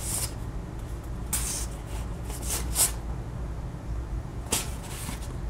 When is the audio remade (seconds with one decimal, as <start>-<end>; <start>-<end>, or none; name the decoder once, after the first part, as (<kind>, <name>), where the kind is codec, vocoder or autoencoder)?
4.3-4.9 (vocoder, Vocos)

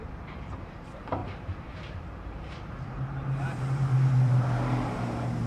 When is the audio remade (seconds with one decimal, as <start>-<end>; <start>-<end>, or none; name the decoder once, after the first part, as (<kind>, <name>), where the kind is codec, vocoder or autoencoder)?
0.0-5.5 (vocoder, BigVGAN v2)

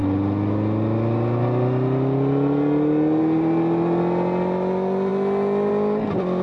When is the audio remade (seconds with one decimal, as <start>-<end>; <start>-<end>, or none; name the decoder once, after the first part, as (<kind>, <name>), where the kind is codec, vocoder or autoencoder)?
none

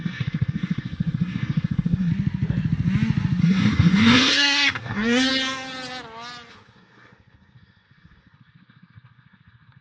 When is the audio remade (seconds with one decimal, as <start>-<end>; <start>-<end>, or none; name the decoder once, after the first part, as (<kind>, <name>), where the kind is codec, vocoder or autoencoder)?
0.0-2.1 (codec, SNAC); 3.4-5.3; 6.5-9.8

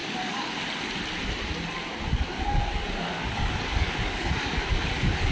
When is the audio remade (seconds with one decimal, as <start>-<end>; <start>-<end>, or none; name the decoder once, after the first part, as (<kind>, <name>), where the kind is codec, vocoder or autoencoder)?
0.0-0.5 (codec, DAC); 2.1-5.3

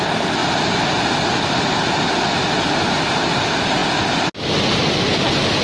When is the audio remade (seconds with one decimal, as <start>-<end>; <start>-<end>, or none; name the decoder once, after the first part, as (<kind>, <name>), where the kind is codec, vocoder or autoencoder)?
none